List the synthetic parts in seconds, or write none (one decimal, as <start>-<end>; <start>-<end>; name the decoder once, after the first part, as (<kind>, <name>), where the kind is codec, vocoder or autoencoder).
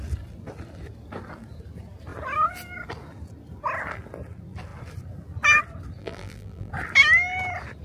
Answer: 6.0-6.7 (vocoder, BigVGAN v2)